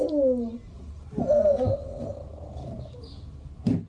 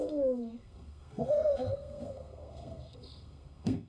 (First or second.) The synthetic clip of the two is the second